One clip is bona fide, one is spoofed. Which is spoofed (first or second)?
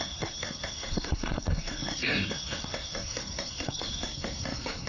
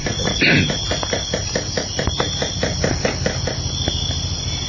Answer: first